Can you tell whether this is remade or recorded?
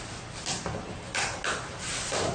recorded